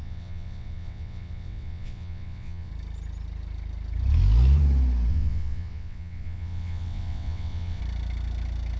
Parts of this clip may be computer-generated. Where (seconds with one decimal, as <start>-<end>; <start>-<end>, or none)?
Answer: 0.0-2.7; 5.1-7.8